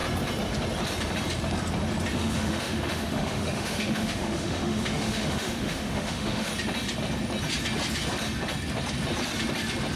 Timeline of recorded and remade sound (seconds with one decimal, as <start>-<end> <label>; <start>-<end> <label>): 0.0-2.1 recorded; 2.1-6.5 remade; 6.5-10.0 recorded